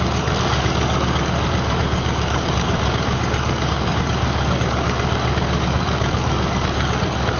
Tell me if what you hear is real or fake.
fake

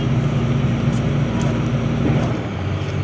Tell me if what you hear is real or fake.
real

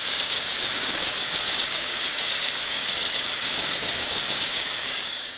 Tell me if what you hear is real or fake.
fake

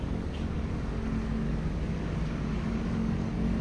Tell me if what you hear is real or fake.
fake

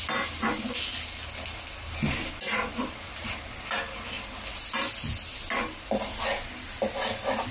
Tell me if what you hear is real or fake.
real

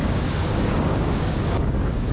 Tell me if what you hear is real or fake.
fake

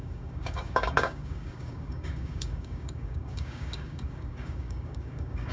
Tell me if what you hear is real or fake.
fake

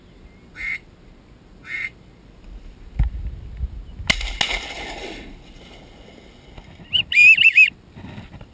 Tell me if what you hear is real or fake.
real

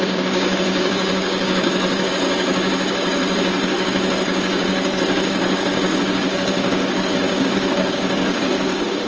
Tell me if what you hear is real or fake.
fake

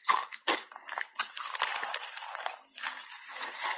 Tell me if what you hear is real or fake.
real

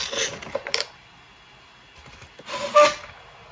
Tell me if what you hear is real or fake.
real